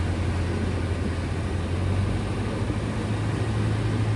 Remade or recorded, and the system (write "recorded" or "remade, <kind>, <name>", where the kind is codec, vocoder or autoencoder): recorded